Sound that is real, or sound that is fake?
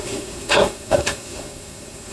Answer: fake